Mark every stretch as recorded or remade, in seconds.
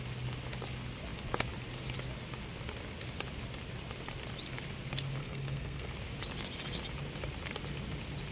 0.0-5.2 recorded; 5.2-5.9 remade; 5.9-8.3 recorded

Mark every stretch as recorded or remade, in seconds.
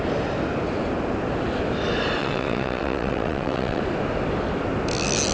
0.0-2.2 recorded; 2.2-3.8 remade; 3.8-5.3 recorded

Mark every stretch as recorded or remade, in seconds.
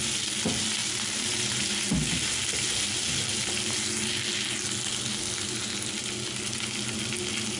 0.0-7.6 recorded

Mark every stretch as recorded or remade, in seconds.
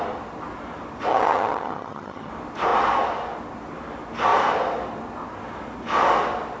0.0-1.1 recorded; 1.1-2.3 remade; 2.3-6.6 recorded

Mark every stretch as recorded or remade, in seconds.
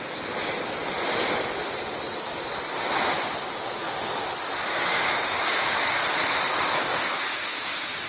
0.0-4.7 recorded; 4.7-5.8 remade; 5.8-6.9 recorded; 6.9-8.1 remade